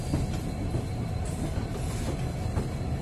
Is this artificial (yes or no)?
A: no